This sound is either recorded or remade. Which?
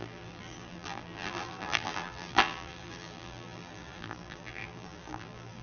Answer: remade